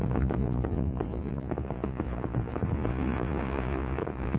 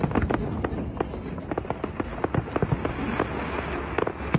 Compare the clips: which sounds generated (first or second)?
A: first